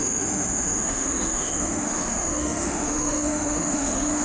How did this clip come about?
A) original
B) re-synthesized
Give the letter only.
B